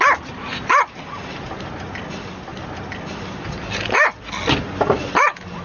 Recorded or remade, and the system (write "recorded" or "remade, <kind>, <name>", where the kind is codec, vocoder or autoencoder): recorded